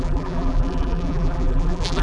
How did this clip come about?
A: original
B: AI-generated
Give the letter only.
B